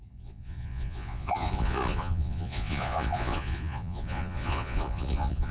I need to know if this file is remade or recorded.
remade